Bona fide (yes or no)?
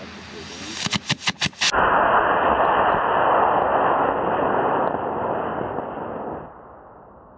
yes